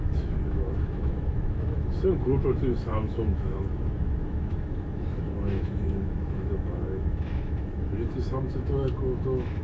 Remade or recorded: remade